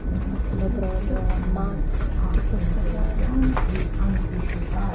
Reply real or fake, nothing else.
real